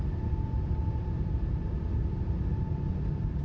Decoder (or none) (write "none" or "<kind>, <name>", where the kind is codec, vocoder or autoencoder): none